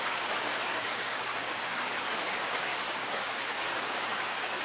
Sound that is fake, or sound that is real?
fake